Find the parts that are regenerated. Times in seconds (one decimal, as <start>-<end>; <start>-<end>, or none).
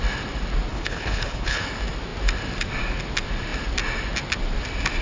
0.7-1.7